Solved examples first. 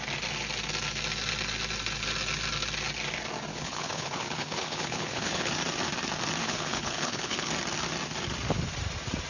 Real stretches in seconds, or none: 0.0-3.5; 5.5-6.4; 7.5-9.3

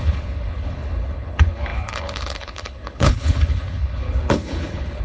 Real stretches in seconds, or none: none

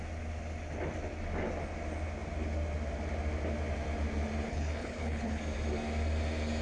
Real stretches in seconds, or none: 0.0-4.5; 5.4-6.6

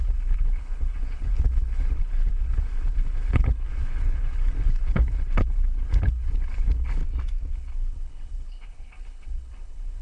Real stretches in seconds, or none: 7.0-7.5

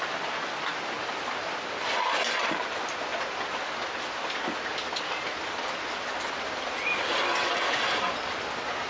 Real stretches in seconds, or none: 0.0-8.9